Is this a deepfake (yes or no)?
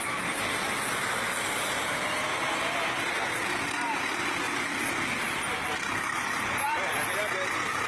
no